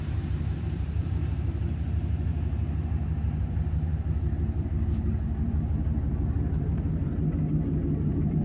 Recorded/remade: remade